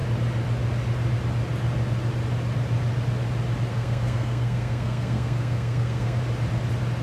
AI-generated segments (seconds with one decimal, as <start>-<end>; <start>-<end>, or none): 3.7-6.2

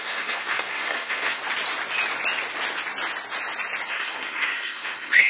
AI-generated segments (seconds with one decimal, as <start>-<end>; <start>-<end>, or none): 0.0-1.4; 3.9-5.3